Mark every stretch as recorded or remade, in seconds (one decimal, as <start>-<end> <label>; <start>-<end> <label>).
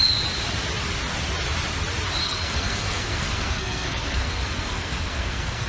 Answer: 0.0-2.2 recorded; 2.2-5.7 remade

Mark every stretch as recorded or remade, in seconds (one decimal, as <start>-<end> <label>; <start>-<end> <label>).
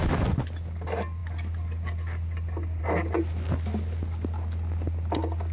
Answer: 0.0-5.5 recorded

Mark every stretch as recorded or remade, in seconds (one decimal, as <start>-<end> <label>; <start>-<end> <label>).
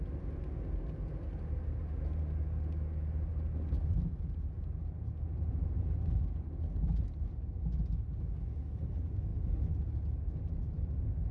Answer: 0.0-11.3 recorded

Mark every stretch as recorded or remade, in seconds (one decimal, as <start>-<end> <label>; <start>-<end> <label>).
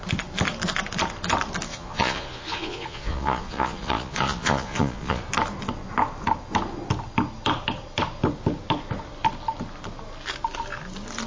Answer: 0.0-1.7 recorded; 1.7-5.2 remade; 5.2-11.3 recorded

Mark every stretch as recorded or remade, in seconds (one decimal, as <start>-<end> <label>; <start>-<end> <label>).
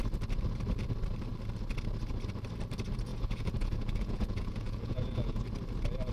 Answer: 0.0-3.1 recorded; 3.1-5.4 remade; 5.4-6.1 recorded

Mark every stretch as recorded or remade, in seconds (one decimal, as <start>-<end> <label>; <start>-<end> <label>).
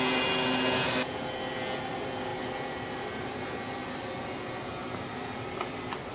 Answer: 0.0-6.1 recorded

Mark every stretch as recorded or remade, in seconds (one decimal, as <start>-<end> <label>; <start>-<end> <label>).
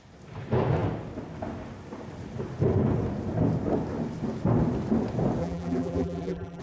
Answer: 0.0-5.4 recorded; 5.4-6.6 remade